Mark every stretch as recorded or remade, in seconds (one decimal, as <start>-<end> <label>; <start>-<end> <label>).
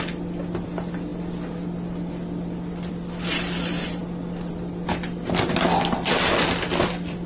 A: 0.0-7.3 recorded